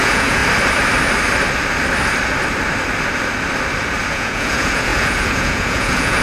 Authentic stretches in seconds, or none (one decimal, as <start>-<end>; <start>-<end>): 0.4-4.1